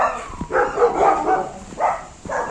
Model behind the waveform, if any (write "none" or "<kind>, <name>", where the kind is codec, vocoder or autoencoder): none